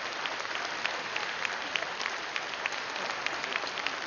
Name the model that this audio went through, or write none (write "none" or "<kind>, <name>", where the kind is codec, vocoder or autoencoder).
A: vocoder, BigVGAN v2